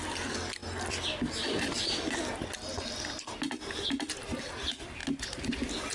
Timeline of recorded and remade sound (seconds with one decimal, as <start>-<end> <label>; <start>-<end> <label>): 0.0-5.9 recorded